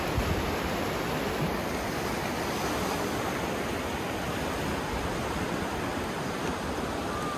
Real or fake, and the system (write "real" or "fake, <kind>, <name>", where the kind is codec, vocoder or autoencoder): real